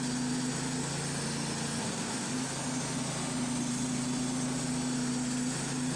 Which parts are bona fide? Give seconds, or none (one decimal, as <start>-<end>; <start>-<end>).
0.0-1.8; 2.3-6.0